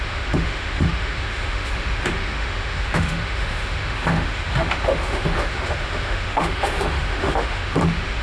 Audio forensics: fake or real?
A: fake